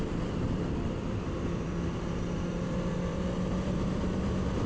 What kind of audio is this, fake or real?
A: fake